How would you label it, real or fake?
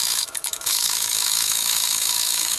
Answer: fake